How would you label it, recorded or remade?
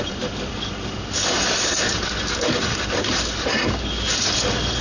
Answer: recorded